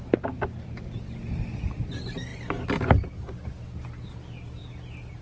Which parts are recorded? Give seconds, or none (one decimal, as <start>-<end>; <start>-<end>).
0.0-5.2

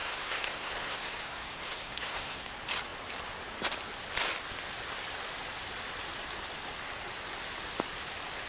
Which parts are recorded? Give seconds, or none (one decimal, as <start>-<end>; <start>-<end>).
2.5-8.5

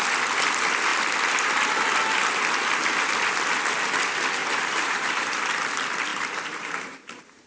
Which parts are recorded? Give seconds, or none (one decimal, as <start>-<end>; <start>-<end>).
0.0-4.4; 5.4-6.1

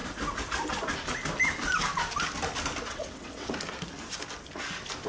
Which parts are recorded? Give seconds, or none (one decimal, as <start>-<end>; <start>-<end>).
0.0-2.9; 3.5-5.1

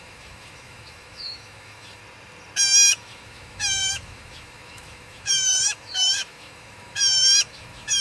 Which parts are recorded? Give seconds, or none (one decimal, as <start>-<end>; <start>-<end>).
2.0-2.9

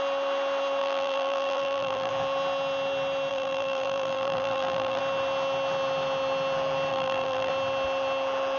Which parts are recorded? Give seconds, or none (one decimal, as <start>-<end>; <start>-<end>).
0.0-0.8; 2.1-3.3; 5.0-6.9; 7.5-8.6

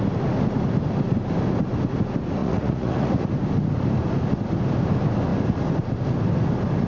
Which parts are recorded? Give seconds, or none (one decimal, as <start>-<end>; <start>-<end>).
0.0-2.4; 3.3-6.9